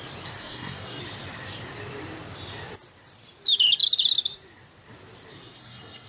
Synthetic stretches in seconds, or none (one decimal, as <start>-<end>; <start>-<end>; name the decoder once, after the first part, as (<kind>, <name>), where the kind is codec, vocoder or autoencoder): 0.4-1.0 (codec, SNAC); 5.3-6.1